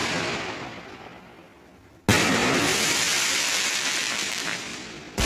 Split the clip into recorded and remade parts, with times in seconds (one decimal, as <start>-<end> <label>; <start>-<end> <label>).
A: 0.0-4.7 recorded; 4.7-5.3 remade